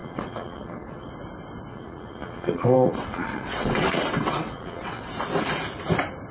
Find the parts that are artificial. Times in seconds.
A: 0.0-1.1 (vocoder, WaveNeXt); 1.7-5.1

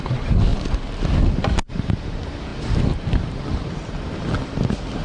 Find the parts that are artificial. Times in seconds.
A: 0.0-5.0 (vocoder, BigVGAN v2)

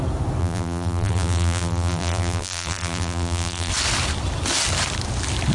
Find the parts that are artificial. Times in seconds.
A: 0.4-3.7 (vocoder, BigVGAN v2)

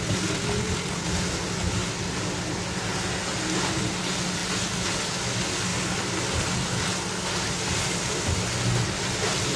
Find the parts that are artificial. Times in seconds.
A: none